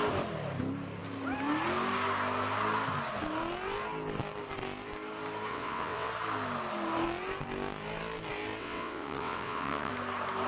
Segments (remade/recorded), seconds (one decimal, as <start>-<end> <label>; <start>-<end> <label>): 0.0-5.5 recorded; 5.5-6.1 remade; 6.1-8.6 recorded; 8.6-9.9 remade; 9.9-10.5 recorded